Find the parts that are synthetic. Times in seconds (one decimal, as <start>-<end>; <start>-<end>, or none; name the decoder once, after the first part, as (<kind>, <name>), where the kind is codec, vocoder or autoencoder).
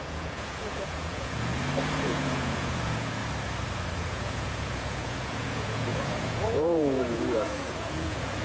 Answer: 0.0-1.5 (vocoder, Vocos); 2.0-3.2; 4.1-8.4